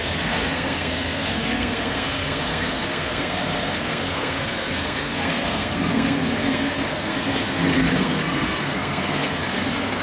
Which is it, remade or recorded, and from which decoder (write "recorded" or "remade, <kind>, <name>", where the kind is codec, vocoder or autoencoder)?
remade, codec, SNAC